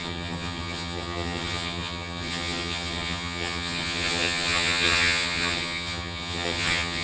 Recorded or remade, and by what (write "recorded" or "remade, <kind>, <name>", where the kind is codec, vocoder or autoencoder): remade, vocoder, HiFi-GAN